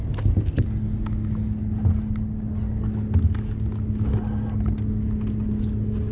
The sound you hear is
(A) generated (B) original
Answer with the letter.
B